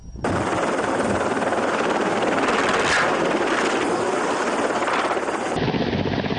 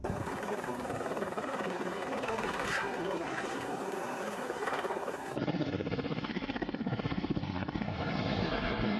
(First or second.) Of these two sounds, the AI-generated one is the second